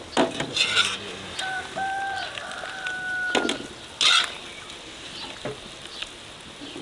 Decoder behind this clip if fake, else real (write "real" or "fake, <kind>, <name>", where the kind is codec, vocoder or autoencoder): real